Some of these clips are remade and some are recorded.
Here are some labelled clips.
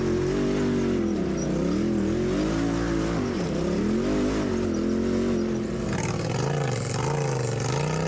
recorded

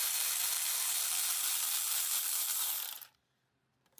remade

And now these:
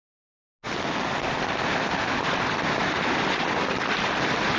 recorded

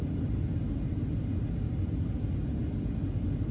recorded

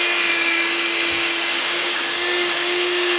remade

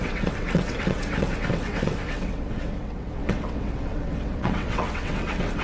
remade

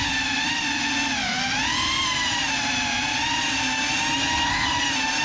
recorded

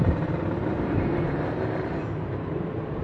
remade